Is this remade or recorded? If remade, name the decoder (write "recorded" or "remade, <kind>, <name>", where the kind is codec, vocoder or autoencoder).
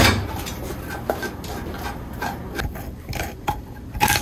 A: recorded